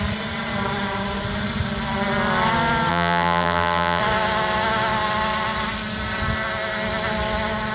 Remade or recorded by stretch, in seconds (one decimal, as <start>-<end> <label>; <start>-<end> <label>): 0.0-2.9 recorded; 2.9-4.0 remade; 4.0-7.7 recorded